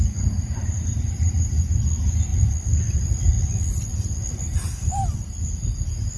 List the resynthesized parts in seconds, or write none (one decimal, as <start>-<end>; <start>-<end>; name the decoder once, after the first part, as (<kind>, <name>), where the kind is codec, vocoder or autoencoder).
0.6-1.8 (vocoder, BigVGAN v2)